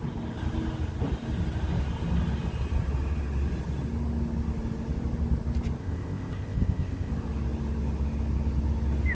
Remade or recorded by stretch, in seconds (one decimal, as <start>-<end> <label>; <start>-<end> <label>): 0.0-5.8 recorded; 5.8-7.1 remade; 7.1-9.1 recorded